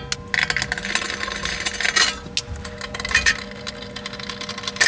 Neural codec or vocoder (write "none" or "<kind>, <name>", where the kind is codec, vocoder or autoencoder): none